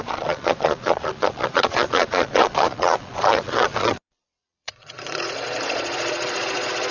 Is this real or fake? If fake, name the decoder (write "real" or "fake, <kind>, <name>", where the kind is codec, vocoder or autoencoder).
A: fake, vocoder, Vocos